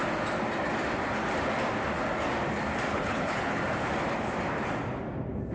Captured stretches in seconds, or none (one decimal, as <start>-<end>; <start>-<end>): 0.0-2.9; 3.6-5.5